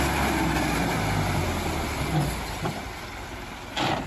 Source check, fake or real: real